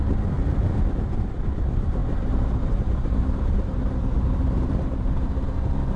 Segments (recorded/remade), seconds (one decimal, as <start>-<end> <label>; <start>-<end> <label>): 0.0-2.0 recorded; 2.0-5.6 remade; 5.6-6.0 recorded